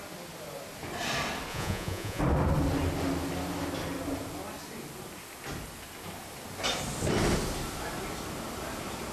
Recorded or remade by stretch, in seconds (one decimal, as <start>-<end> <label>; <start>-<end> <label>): 0.0-1.5 recorded; 1.5-2.2 remade; 2.2-9.1 recorded